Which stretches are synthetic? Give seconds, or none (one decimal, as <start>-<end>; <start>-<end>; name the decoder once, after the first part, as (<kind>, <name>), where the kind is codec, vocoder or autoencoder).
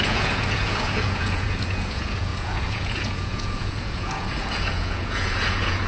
0.0-5.9 (vocoder, Vocos)